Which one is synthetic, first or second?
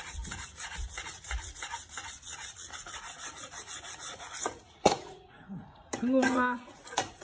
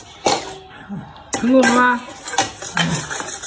first